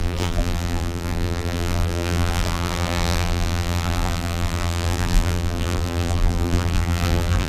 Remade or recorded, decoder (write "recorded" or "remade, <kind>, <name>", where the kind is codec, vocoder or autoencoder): remade, vocoder, BigVGAN v2